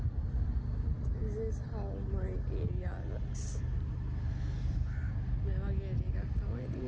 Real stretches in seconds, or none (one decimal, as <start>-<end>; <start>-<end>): 0.0-6.9